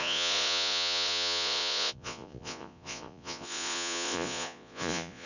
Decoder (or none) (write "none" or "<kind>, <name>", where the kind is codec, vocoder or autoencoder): vocoder, Vocos